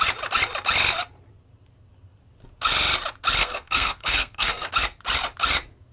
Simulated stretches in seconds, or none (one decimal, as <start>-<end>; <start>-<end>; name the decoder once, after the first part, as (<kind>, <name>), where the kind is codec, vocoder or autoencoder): 3.4-4.7 (codec, SNAC)